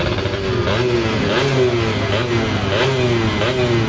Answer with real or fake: real